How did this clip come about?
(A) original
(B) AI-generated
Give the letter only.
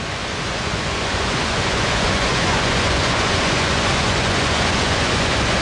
B